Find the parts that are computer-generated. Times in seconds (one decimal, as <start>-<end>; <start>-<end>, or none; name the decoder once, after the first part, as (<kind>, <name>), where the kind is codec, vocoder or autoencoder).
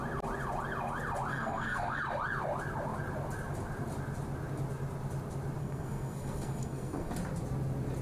1.3-2.0 (codec, SNAC); 5.6-7.1